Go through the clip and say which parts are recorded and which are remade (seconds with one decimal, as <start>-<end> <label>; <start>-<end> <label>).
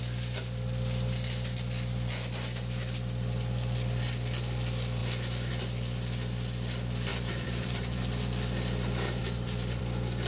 0.0-7.1 recorded; 7.1-8.0 remade; 8.0-9.2 recorded; 9.2-9.8 remade; 9.8-10.3 recorded